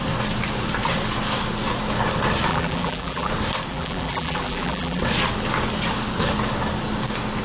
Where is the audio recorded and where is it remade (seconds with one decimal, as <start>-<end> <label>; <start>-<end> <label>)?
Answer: 0.0-2.5 recorded; 2.5-3.3 remade; 3.3-3.7 recorded; 3.7-5.0 remade; 5.0-7.4 recorded